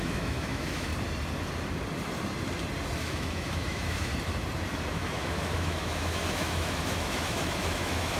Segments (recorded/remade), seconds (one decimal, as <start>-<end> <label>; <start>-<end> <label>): 0.0-0.9 remade; 0.9-3.0 recorded; 3.0-4.1 remade; 4.1-4.9 recorded; 4.9-8.2 remade